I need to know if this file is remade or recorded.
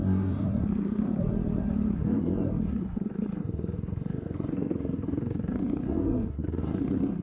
remade